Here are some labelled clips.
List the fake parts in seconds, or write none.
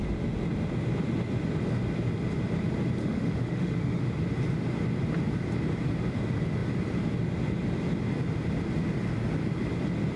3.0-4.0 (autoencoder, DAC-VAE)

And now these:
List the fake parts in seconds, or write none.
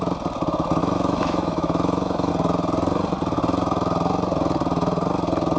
0.8-2.3 (autoencoder, DAC-VAE)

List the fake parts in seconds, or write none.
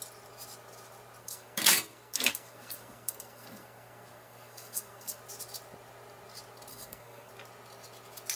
1.2-5.2 (codec, SNAC); 6.7-7.3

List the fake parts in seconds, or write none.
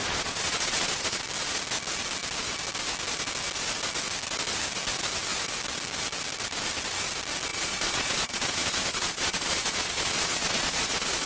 0.0-1.2 (vocoder, Vocos); 7.5-11.3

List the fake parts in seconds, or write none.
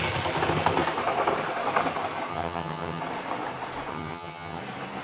2.3-3.0 (vocoder, HiFi-GAN); 3.9-4.6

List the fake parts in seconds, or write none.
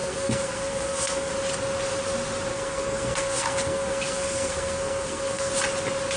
0.0-1.3 (codec, SNAC); 2.5-5.5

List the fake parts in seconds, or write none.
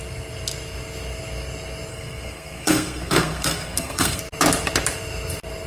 1.9-4.2 (codec, SNAC)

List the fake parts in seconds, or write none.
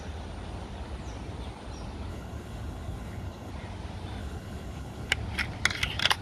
2.1-3.5 (codec, HILCodec); 4.2-5.1